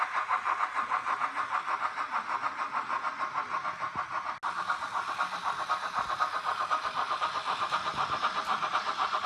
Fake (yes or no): no